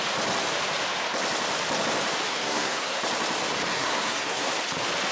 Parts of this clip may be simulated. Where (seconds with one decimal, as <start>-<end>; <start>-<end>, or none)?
2.3-3.0; 3.7-4.5